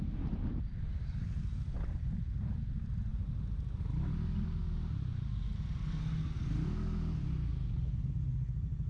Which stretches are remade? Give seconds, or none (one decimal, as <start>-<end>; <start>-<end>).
none